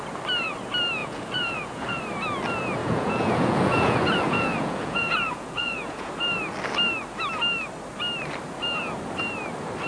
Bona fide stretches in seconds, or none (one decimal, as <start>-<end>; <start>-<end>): 0.0-1.0; 2.0-2.8; 6.1-9.9